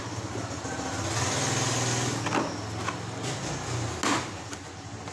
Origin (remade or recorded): recorded